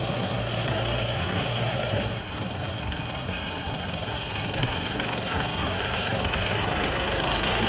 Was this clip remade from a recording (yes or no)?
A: yes